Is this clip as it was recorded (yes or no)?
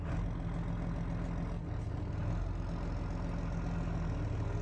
yes